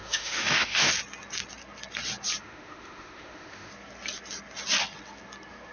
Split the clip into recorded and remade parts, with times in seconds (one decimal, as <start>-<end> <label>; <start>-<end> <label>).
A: 0.0-0.9 remade; 0.9-2.4 recorded; 2.4-3.7 remade; 3.7-5.7 recorded